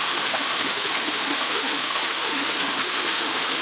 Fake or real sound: fake